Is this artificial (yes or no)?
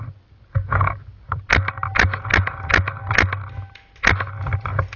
no